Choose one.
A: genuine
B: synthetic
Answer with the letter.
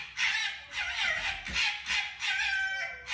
A